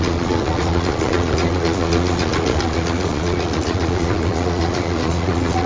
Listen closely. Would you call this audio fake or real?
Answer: fake